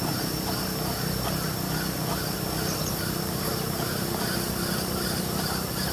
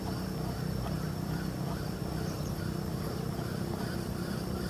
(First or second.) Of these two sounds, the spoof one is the second